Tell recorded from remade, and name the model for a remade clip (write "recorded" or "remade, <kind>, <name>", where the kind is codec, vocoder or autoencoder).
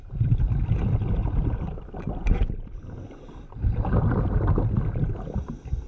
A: recorded